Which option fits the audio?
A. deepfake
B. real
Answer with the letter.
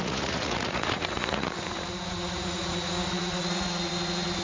A